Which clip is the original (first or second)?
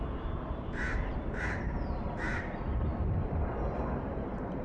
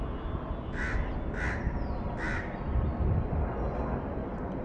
second